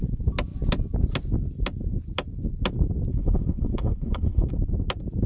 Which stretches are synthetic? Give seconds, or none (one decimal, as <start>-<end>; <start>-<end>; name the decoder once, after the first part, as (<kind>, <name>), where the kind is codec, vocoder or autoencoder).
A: 3.1-4.5 (codec, HILCodec)